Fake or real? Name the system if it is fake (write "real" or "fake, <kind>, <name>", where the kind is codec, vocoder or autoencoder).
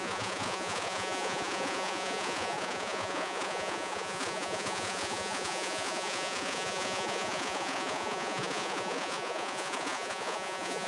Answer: fake, vocoder, Vocos